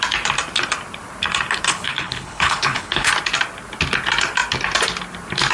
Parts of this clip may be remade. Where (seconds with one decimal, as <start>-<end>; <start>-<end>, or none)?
1.7-3.1